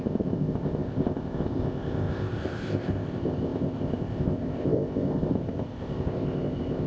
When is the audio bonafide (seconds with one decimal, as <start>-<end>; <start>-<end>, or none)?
none